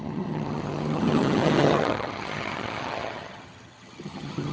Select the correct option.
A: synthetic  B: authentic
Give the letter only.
A